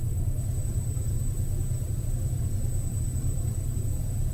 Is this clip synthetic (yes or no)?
yes